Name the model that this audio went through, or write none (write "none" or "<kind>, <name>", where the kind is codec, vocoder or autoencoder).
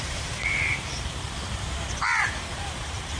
vocoder, BigVGAN v2